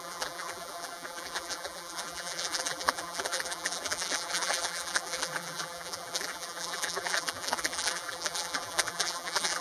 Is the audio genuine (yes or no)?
no